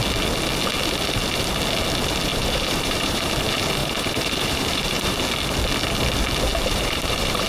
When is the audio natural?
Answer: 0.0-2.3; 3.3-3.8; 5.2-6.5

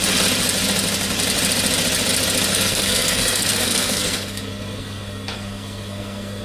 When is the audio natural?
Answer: 0.0-2.5

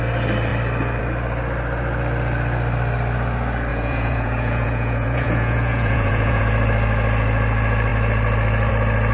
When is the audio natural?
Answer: 0.0-3.7; 6.4-9.1

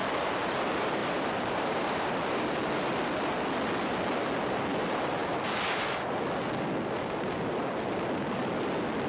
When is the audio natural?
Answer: 0.0-1.0; 2.1-9.1

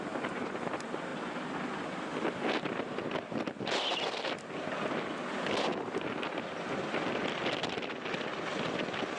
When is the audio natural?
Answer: 0.0-1.1; 3.0-9.2